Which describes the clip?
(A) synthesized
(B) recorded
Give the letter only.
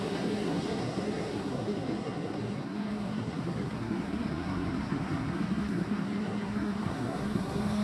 A